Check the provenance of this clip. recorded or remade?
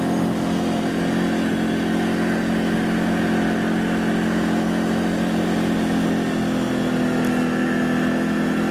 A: recorded